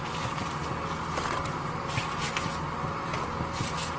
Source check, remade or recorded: recorded